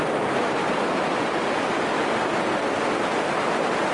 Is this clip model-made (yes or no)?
no